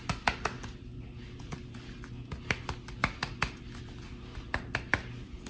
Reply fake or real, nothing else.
real